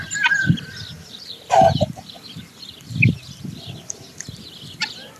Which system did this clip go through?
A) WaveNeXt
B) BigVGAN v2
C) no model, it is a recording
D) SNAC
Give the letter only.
B